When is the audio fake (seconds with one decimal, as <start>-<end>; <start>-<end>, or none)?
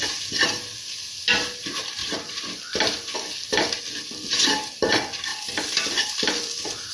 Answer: 2.0-3.8; 5.3-6.9